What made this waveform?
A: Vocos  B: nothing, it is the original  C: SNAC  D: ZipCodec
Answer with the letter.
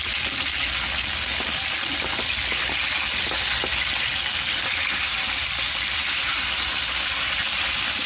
B